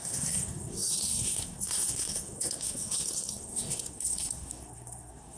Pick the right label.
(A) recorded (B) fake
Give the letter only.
B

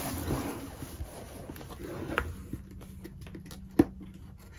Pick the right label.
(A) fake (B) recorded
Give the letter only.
B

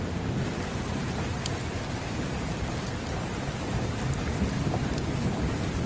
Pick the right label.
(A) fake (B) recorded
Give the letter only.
B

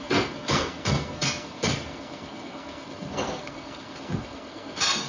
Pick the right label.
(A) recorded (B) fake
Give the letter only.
B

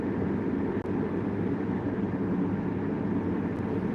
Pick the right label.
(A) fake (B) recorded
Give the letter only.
B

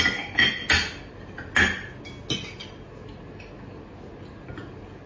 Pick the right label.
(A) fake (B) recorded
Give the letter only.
B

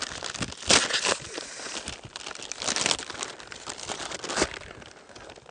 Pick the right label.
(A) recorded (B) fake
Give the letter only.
A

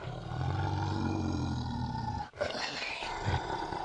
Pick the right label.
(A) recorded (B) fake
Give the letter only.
A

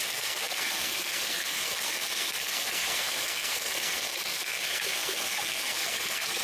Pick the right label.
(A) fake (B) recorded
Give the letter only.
A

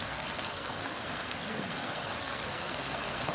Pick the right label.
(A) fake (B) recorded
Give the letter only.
A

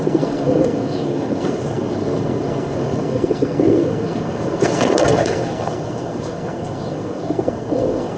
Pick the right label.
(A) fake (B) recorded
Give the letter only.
A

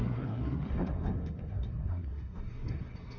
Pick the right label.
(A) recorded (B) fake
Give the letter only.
B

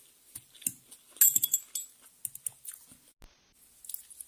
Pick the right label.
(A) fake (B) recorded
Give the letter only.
B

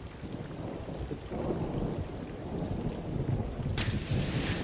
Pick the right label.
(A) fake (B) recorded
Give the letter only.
B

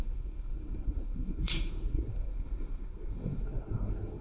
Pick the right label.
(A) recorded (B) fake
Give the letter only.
B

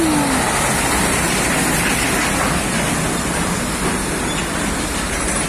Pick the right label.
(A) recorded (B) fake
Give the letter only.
A